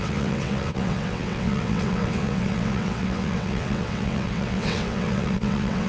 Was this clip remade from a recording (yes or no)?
yes